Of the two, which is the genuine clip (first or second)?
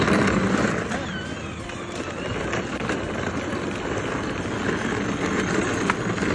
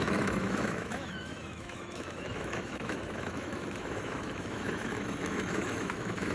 first